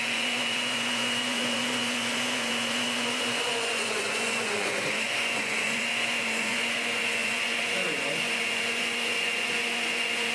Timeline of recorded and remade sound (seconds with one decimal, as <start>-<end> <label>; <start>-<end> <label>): 0.0-10.3 remade